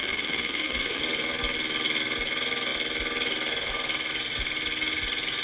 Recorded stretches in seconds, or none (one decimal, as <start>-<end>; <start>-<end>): 1.0-5.4